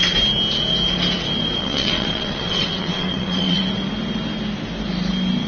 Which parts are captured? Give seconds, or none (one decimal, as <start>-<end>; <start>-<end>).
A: 0.0-1.6; 3.6-5.5